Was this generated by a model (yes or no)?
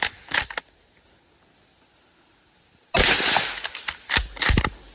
no